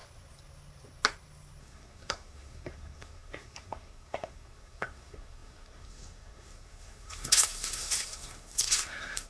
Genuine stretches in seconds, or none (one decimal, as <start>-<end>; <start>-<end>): 0.0-1.6